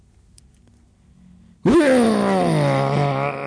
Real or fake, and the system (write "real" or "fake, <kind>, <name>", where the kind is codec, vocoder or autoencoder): real